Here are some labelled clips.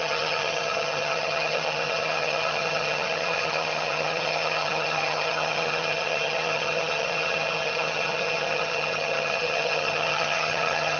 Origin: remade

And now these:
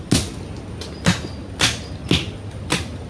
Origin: recorded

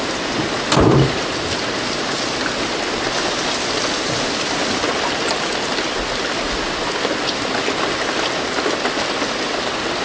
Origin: recorded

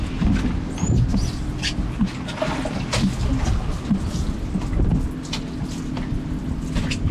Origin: recorded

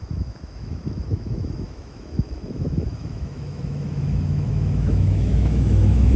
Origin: remade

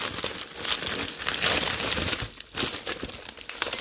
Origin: recorded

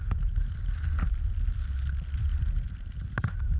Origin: recorded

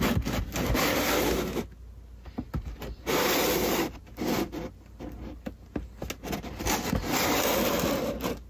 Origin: recorded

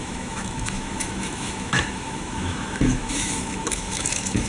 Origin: remade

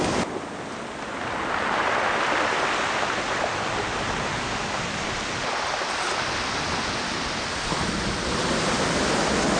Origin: recorded